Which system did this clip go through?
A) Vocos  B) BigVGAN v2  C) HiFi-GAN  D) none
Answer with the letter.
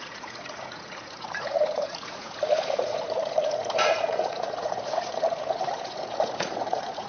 A